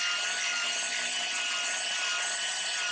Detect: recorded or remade recorded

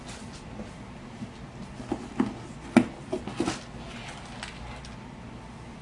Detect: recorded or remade recorded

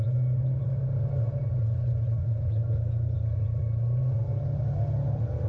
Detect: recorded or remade recorded